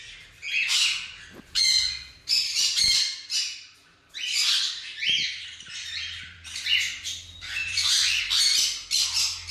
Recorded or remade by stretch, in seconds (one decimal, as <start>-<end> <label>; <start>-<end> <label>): 0.0-2.5 recorded; 2.5-6.5 remade; 6.5-7.6 recorded; 7.6-8.2 remade; 8.2-9.5 recorded